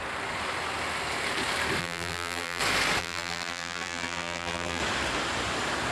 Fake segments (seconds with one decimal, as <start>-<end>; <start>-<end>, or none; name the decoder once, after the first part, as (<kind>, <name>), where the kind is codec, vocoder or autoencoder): 1.8-2.6 (vocoder, BigVGAN v2); 3.0-4.8

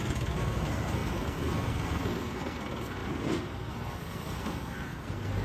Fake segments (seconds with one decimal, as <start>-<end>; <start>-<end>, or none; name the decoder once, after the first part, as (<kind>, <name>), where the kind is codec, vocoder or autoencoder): 0.0-5.4 (codec, SNAC)